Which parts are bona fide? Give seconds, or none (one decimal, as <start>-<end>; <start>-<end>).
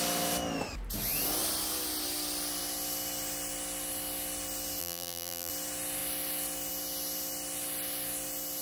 0.0-4.8; 5.5-8.6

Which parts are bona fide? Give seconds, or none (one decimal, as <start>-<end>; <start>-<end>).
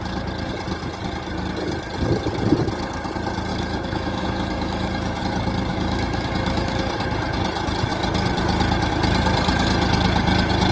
0.0-3.5; 5.2-5.7; 6.9-10.7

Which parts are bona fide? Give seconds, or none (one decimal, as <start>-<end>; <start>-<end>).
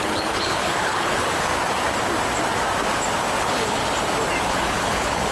1.5-3.4; 3.8-4.5